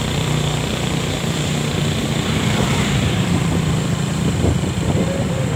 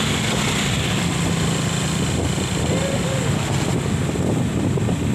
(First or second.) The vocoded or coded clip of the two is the first